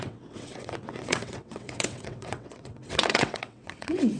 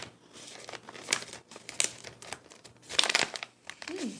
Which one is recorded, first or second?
second